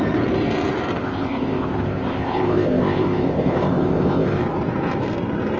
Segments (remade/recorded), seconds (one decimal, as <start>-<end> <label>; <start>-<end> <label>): 0.0-1.0 recorded; 1.0-4.4 remade; 4.4-5.6 recorded